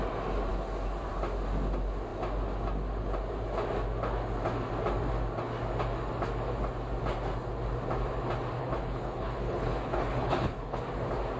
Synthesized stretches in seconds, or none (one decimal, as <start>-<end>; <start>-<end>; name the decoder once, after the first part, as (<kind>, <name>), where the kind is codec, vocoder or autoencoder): 8.6-10.8 (codec, HILCodec)